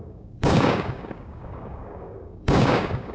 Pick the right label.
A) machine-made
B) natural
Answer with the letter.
A